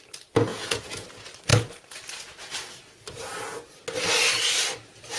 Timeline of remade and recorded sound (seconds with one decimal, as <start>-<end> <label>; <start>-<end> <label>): 0.0-0.5 recorded; 0.5-1.1 remade; 1.1-5.2 recorded